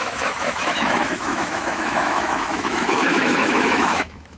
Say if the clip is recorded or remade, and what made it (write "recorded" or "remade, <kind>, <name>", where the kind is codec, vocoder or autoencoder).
remade, autoencoder, DAC-VAE